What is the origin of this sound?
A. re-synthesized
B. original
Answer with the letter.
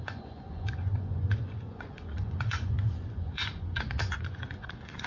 A